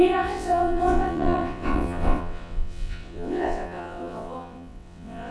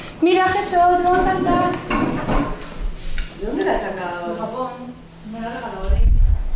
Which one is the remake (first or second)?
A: first